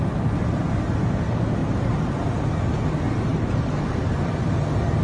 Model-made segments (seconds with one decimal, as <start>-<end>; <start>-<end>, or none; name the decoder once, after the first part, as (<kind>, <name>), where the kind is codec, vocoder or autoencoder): 1.6-2.4 (vocoder, BigVGAN v2); 3.3-5.0